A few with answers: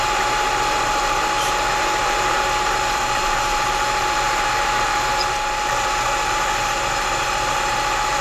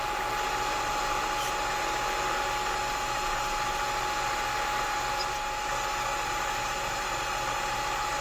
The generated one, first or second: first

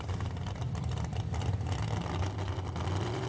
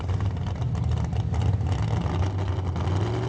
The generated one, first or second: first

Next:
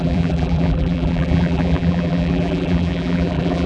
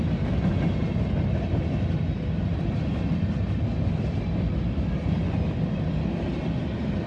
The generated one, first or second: first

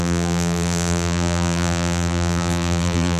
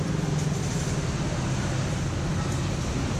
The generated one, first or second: first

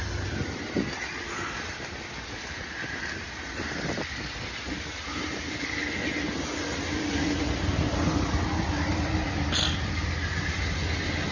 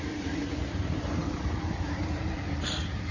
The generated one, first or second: second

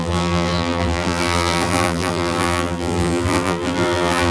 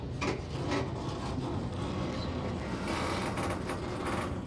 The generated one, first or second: first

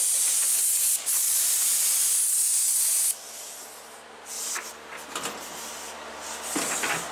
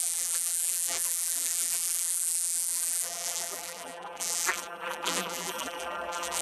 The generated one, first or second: second